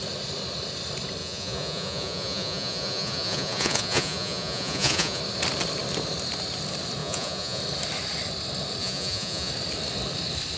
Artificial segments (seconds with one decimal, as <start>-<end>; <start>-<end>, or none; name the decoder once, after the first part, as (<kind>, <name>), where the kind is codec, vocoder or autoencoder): 1.2-5.2 (vocoder, Vocos); 7.0-7.6; 8.8-9.5